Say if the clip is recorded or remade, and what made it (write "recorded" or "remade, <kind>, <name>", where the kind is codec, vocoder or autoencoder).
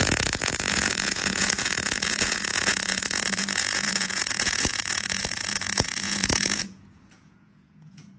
remade, vocoder, Vocos